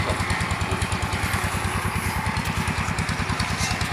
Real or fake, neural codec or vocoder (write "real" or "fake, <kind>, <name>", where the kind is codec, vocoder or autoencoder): real